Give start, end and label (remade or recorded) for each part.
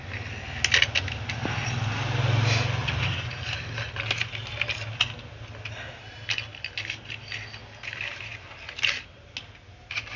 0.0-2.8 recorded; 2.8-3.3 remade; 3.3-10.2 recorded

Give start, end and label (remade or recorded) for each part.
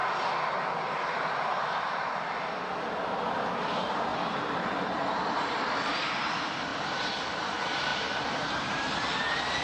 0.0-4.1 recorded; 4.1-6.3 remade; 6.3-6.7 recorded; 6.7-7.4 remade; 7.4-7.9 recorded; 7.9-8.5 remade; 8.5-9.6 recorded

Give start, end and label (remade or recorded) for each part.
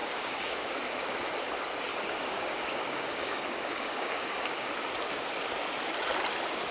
0.0-0.7 remade; 0.7-1.9 recorded; 1.9-4.7 remade; 4.7-6.7 recorded